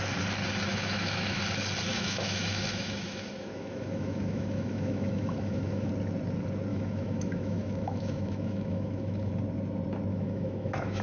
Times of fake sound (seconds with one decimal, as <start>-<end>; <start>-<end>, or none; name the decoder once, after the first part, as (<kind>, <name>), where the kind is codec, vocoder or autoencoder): 0.7-1.4 (autoencoder, DAC-VAE); 1.9-5.9; 6.7-9.3; 10.1-11.0